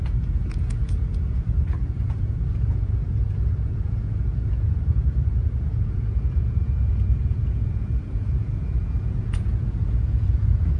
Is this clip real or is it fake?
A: fake